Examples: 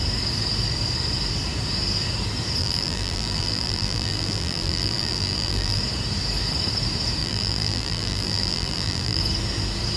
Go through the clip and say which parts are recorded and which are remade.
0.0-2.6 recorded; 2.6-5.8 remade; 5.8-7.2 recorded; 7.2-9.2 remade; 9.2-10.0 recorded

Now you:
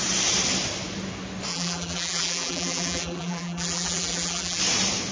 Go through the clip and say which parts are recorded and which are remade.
0.0-1.5 recorded; 1.5-4.6 remade; 4.6-5.1 recorded

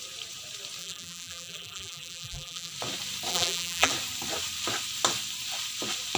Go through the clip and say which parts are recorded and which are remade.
0.0-0.8 recorded; 0.8-2.7 remade; 2.7-3.3 recorded; 3.3-3.9 remade; 3.9-6.2 recorded

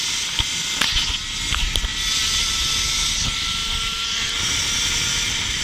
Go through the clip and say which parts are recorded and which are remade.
0.0-5.6 recorded

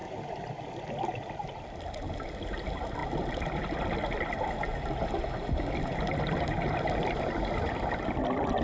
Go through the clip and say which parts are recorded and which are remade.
0.0-8.6 recorded